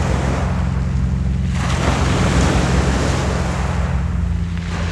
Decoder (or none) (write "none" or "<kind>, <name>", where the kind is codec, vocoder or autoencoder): none